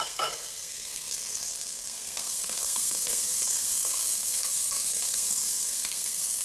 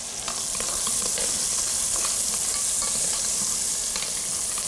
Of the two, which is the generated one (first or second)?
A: first